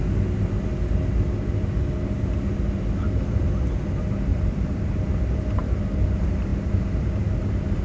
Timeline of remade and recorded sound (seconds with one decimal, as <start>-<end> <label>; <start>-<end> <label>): 0.0-4.3 recorded; 4.3-5.0 remade; 5.0-7.8 recorded